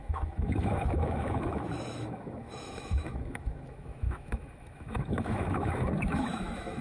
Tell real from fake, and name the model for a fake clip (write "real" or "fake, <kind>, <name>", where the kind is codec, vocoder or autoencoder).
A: fake, autoencoder, DAC-VAE